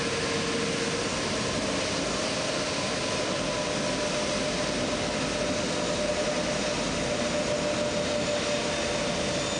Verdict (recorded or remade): recorded